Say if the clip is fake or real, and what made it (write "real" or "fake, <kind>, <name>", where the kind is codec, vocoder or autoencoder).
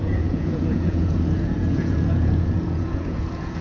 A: fake, vocoder, Vocos